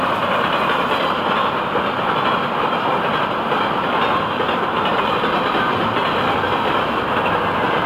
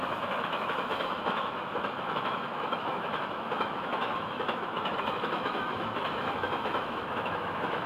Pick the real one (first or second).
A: first